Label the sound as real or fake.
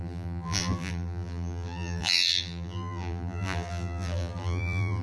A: fake